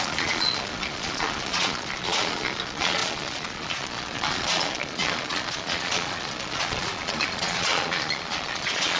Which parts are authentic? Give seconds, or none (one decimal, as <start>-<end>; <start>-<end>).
none